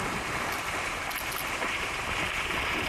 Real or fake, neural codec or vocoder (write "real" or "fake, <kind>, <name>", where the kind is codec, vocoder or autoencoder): fake, vocoder, BigVGAN v2